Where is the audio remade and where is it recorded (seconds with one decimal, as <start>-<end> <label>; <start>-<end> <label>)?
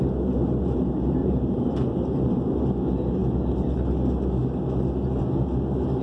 0.0-1.2 recorded; 1.2-2.3 remade; 2.3-6.0 recorded